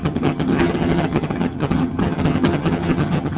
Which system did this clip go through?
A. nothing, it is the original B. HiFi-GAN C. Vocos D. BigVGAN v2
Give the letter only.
B